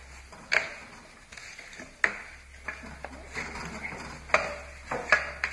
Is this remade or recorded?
recorded